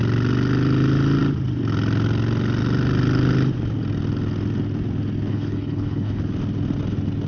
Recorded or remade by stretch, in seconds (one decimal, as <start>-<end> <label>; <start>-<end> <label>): 0.0-5.3 recorded; 5.3-6.2 remade; 6.2-7.3 recorded